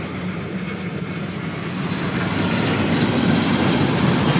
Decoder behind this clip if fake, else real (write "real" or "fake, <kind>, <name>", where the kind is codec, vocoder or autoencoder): real